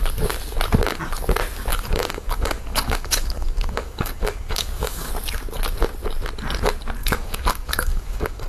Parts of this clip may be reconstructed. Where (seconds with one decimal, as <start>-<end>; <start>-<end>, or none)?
1.7-5.1; 7.0-8.5